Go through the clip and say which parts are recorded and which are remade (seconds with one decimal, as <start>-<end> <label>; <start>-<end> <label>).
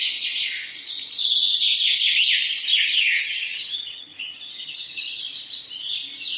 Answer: 0.0-2.7 recorded; 2.7-5.2 remade; 5.2-6.4 recorded